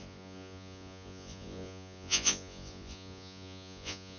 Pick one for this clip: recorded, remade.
remade